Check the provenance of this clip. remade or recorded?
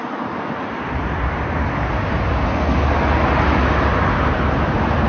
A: recorded